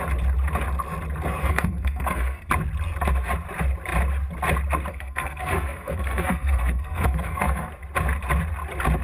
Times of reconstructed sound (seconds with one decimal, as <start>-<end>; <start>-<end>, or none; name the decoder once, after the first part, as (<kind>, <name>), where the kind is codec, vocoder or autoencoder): 1.4-2.5 (codec, SNAC); 4.9-7.7